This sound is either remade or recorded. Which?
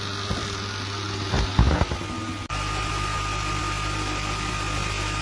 recorded